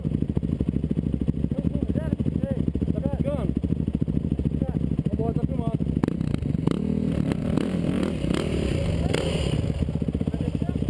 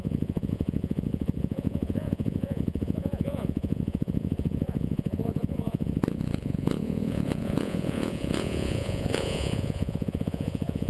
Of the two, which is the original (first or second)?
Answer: first